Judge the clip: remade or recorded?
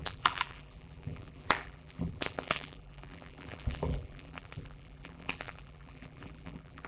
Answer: remade